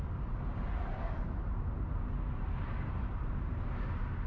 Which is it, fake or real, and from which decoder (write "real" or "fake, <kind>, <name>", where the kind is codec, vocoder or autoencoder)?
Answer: real